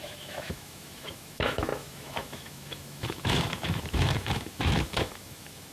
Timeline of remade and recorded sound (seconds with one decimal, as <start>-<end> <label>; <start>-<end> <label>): 0.0-5.7 remade